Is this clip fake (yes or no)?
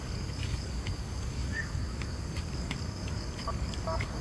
yes